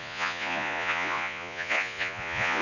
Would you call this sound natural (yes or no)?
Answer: no